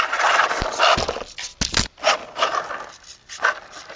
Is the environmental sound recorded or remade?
recorded